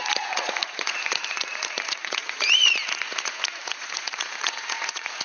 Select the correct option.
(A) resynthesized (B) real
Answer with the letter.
A